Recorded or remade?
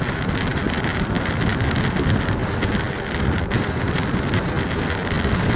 recorded